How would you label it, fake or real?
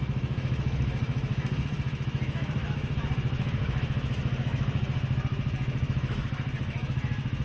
fake